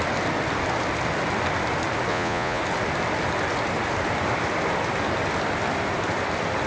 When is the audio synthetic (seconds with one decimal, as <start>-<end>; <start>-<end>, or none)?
2.1-2.6